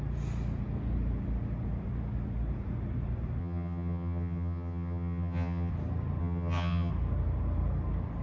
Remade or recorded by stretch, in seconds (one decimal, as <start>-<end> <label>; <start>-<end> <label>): 0.0-3.4 recorded; 3.4-5.7 remade; 5.7-6.2 recorded; 6.2-6.9 remade; 6.9-8.2 recorded